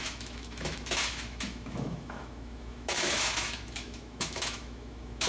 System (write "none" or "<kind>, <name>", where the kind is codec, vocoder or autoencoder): autoencoder, DAC-VAE